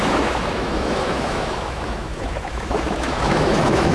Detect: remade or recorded remade